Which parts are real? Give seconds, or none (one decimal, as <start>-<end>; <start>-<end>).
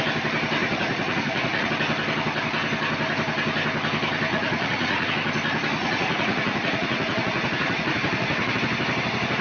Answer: 0.0-0.6; 1.7-4.3; 5.1-5.8; 8.6-9.4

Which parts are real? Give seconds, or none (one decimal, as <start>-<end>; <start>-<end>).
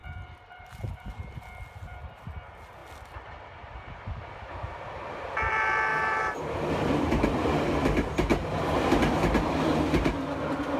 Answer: 1.2-5.9; 6.7-10.8